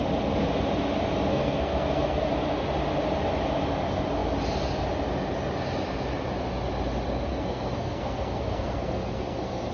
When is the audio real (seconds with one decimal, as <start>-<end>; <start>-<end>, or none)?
0.0-1.3; 2.3-7.3